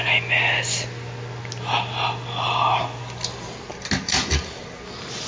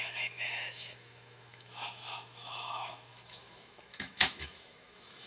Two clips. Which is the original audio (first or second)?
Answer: first